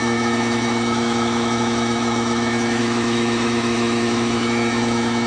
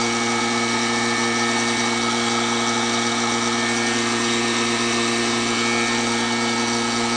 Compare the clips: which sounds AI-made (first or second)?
first